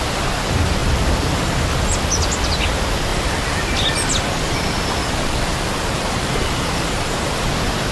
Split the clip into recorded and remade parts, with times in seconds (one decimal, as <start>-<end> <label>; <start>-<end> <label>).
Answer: 0.0-3.1 recorded; 3.1-3.6 remade; 3.6-5.0 recorded; 5.0-7.4 remade; 7.4-7.9 recorded